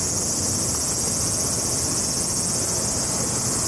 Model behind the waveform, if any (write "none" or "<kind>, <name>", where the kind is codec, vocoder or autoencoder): none